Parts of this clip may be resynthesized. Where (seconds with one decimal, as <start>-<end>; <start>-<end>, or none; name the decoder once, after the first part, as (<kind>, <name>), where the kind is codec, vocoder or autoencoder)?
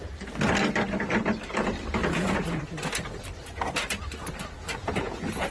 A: 2.0-2.6 (vocoder, Vocos); 4.8-5.5